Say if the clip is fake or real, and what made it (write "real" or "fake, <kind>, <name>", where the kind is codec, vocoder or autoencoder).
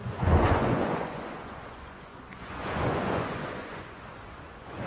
fake, vocoder, Vocos